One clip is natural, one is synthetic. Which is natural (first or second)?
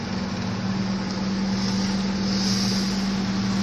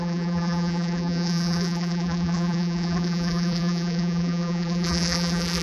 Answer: first